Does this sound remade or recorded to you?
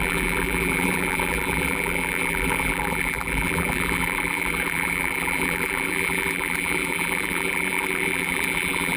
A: remade